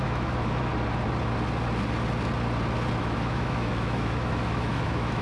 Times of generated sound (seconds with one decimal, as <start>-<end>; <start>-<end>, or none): 0.0-0.7; 3.0-5.2